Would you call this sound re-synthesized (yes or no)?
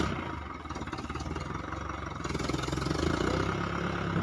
no